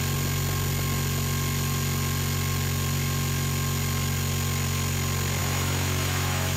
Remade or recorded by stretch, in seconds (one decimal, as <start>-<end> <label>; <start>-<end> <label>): 0.0-5.4 recorded; 5.4-6.6 remade